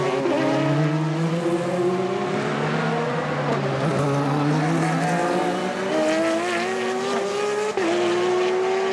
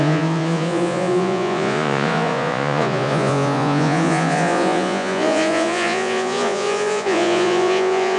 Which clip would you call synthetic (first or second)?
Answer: second